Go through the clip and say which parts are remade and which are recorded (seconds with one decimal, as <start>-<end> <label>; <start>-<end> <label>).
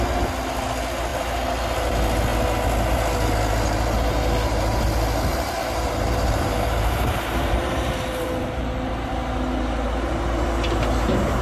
0.0-5.3 recorded; 5.3-8.9 remade; 8.9-11.4 recorded